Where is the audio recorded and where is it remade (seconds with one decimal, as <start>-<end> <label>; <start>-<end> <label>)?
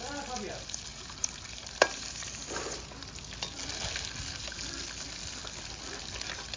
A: 0.0-0.9 recorded; 0.9-3.0 remade; 3.0-6.6 recorded